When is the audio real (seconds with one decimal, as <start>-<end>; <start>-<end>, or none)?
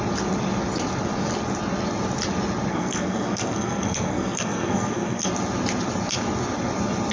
0.0-2.7; 5.3-7.1